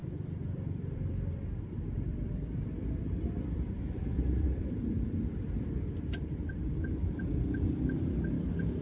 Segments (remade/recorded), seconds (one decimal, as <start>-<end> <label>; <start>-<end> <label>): 0.0-5.0 remade; 5.0-8.8 recorded